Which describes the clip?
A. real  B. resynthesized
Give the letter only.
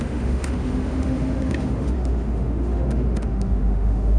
B